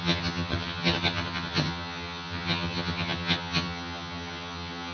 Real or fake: fake